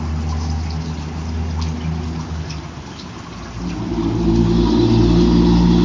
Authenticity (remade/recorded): recorded